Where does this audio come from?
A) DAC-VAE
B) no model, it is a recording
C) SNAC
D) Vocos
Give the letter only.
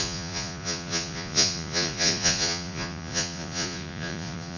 D